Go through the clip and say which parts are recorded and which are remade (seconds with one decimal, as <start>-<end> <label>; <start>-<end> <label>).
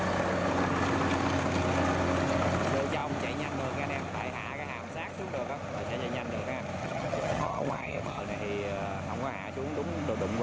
0.0-6.8 recorded; 6.8-8.2 remade; 8.2-10.4 recorded